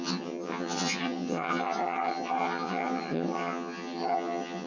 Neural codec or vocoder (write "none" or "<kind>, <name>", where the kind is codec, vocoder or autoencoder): vocoder, HiFi-GAN